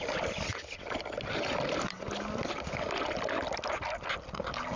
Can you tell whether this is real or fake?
real